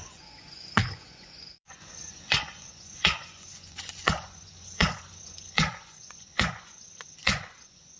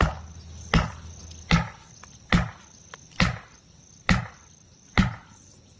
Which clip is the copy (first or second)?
first